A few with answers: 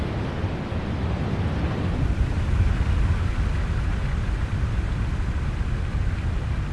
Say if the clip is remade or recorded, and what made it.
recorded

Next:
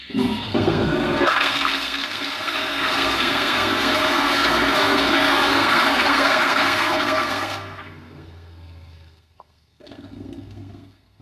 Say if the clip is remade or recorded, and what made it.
remade, codec, SNAC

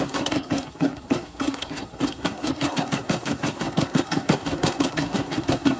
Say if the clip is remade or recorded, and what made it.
remade, codec, SNAC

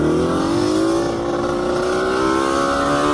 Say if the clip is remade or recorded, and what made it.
recorded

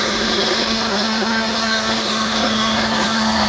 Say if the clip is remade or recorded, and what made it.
remade, codec, SNAC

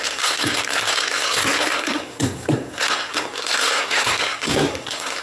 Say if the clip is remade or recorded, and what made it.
remade, codec, SNAC